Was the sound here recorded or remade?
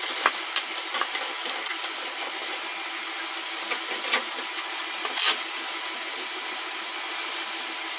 recorded